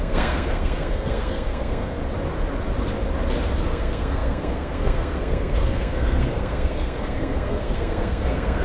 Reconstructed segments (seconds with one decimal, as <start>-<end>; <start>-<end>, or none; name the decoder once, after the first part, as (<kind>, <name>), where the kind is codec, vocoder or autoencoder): 0.0-2.0 (codec, SNAC); 3.6-8.6